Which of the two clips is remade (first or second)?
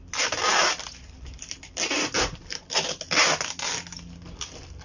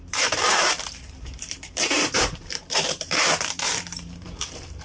second